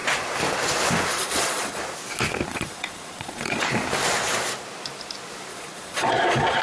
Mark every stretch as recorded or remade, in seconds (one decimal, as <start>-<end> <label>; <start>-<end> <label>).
0.0-1.1 recorded; 1.1-1.8 remade; 1.8-2.5 recorded; 2.5-3.7 remade; 3.7-5.5 recorded; 5.5-6.6 remade